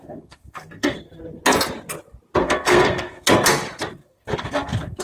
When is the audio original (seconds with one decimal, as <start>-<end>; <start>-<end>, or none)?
1.2-2.4; 3.3-4.0